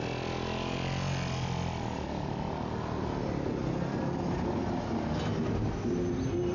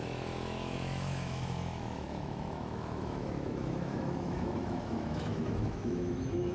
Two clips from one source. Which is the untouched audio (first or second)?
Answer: first